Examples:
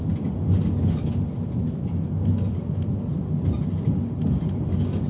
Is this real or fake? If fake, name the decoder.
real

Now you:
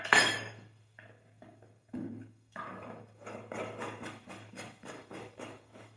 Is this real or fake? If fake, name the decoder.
fake, codec, DAC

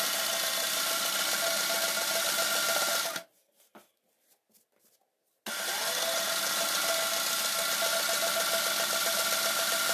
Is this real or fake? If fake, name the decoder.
real